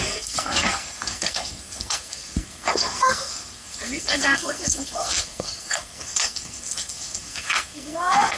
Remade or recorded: remade